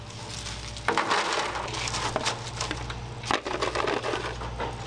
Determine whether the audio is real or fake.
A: real